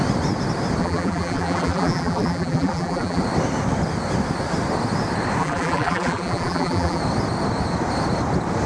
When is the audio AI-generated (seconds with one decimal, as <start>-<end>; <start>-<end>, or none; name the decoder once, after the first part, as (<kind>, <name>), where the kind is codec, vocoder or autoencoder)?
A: 0.8-3.2 (vocoder, BigVGAN v2); 5.4-7.0